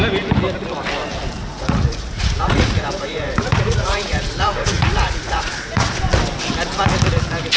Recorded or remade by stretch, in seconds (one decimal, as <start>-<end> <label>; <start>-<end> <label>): 0.0-1.4 recorded; 1.4-6.0 remade; 6.0-7.6 recorded